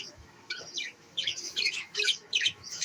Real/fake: fake